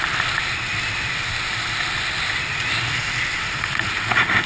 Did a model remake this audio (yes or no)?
no